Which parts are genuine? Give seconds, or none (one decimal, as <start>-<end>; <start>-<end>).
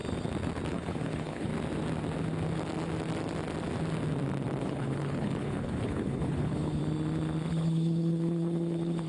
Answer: 0.0-0.7; 1.5-4.6; 6.8-7.5